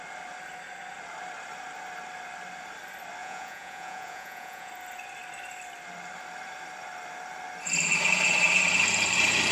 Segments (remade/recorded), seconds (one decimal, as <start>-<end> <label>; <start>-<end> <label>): 0.0-3.2 recorded; 3.2-4.7 remade; 4.7-9.5 recorded